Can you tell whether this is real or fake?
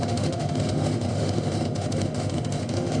fake